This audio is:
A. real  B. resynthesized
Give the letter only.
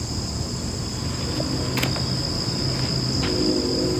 A